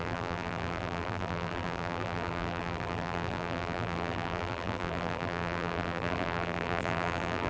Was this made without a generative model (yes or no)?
no